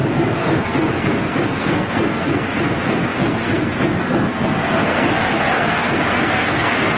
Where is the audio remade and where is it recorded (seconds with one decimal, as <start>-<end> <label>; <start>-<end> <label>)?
0.0-7.0 remade